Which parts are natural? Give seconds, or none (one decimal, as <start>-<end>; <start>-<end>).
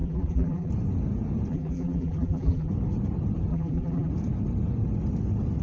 0.7-1.5; 2.7-3.5; 4.1-5.6